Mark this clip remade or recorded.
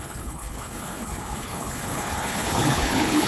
remade